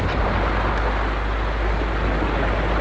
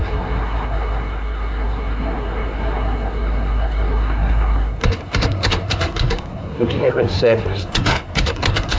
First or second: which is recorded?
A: first